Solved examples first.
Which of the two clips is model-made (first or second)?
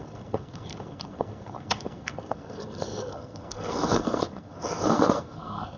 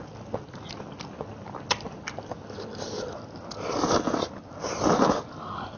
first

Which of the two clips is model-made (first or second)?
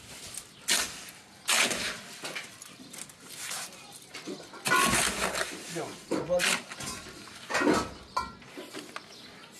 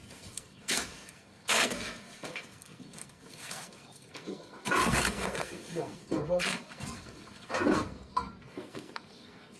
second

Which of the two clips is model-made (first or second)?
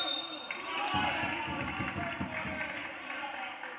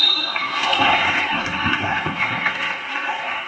second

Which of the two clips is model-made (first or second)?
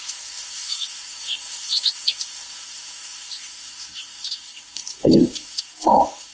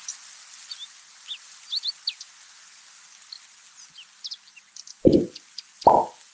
first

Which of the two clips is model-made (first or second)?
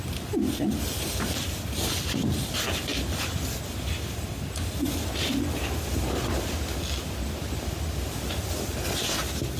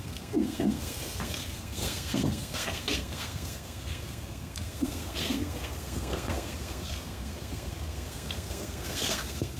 second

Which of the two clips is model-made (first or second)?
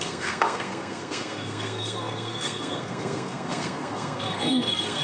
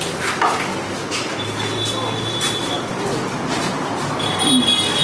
first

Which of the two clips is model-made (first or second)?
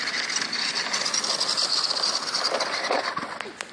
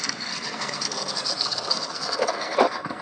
second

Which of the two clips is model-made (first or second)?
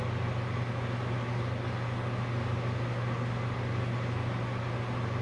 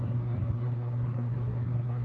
second